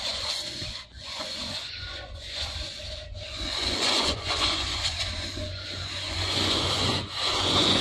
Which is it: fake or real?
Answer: fake